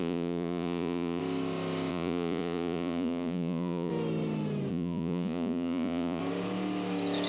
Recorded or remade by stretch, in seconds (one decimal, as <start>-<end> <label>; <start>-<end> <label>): 0.0-1.2 remade; 1.2-1.9 recorded; 1.9-3.9 remade; 3.9-4.7 recorded; 4.7-6.2 remade; 6.2-7.3 recorded

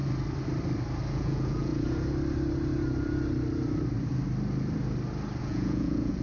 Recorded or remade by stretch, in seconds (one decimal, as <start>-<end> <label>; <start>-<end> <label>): 0.0-1.1 recorded; 1.1-1.7 remade; 1.7-5.4 recorded; 5.4-6.2 remade